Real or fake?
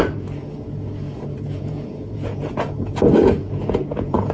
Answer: fake